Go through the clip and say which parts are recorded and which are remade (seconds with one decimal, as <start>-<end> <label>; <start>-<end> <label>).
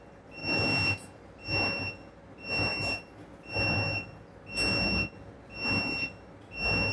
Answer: 0.0-6.9 recorded